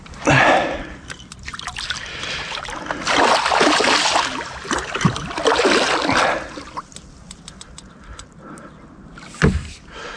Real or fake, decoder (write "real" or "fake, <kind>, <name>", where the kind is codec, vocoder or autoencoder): real